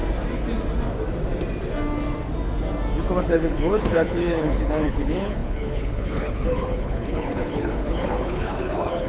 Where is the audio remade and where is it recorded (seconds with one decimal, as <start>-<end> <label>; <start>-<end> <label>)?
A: 0.0-3.2 recorded; 3.2-9.1 remade

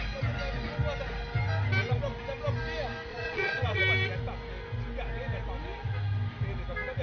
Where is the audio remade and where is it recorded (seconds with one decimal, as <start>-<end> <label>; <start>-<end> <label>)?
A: 0.0-3.1 recorded; 3.1-3.8 remade; 3.8-7.0 recorded

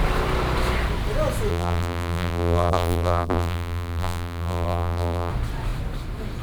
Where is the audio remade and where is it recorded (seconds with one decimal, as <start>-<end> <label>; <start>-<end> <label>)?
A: 0.0-1.5 recorded; 1.5-5.3 remade; 5.3-6.4 recorded

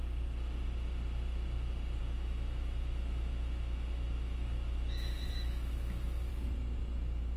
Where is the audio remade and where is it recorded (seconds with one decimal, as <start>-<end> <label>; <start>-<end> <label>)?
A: 0.0-2.0 recorded; 2.0-6.3 remade; 6.3-7.4 recorded

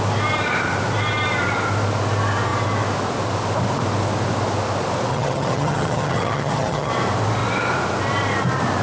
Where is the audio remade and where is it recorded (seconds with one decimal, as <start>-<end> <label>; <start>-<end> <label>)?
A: 0.0-5.1 recorded; 5.1-6.9 remade; 6.9-8.8 recorded

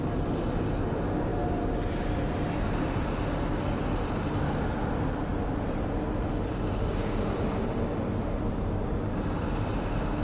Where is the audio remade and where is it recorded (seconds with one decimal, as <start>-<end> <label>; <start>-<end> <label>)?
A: 0.0-10.2 recorded

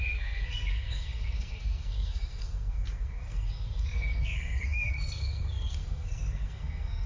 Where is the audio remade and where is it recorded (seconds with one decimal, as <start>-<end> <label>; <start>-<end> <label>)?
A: 0.0-7.1 remade